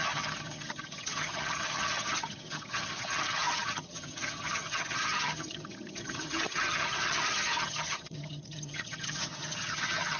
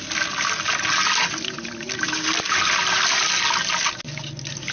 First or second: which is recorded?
second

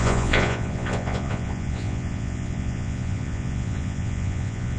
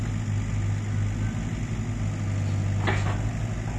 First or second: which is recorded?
second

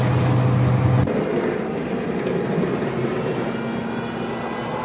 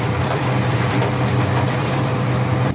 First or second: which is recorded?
first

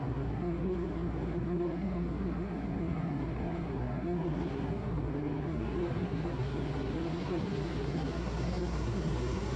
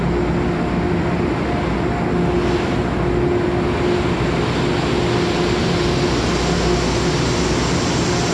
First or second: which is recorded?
second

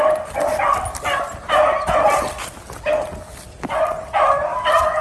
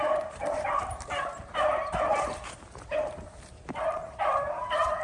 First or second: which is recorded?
first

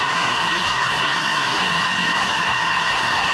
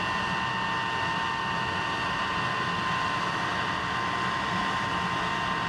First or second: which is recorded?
second